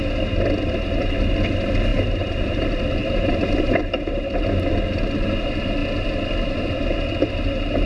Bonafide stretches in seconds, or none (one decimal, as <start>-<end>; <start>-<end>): 0.0-1.9; 2.4-3.0; 3.8-7.9

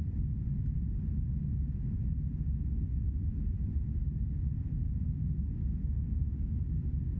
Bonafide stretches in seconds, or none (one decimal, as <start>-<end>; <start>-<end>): 0.0-5.8; 6.6-7.2

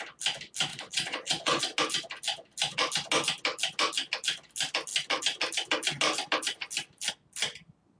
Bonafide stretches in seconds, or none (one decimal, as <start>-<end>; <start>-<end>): 0.0-0.7; 1.6-8.0

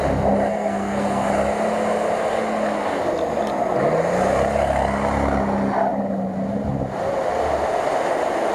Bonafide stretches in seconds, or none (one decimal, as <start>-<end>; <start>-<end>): 0.0-0.5; 1.3-8.5

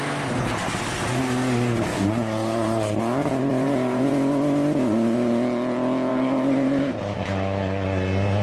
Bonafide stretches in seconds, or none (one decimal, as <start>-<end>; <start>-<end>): 0.0-1.9; 3.0-3.5; 4.1-6.1; 6.9-8.4

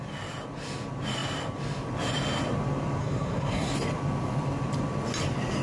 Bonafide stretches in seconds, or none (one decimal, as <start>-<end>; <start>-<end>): 0.0-3.0; 3.7-5.6